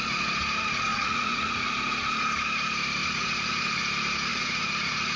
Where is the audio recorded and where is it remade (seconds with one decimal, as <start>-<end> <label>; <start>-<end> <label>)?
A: 0.0-0.9 recorded; 0.9-1.7 remade; 1.7-3.0 recorded; 3.0-3.8 remade; 3.8-4.3 recorded; 4.3-5.2 remade